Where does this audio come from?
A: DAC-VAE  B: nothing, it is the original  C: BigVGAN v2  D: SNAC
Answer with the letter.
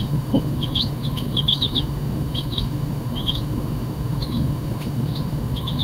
A